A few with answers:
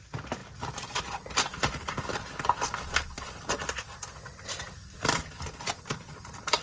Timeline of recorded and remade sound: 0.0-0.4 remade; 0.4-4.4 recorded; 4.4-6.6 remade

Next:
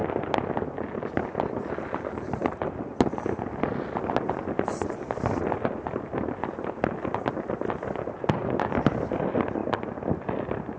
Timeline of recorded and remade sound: 0.0-10.8 recorded